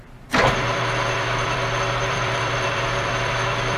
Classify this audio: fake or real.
fake